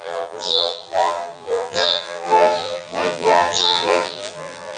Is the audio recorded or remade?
remade